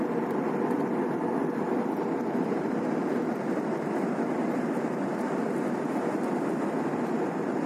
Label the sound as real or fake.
fake